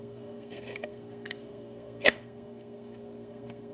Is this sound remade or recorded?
remade